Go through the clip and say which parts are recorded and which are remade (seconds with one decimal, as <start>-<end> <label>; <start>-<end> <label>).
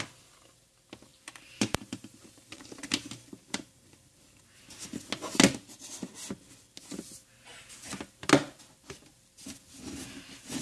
0.0-1.1 recorded; 1.1-4.4 remade; 4.4-10.6 recorded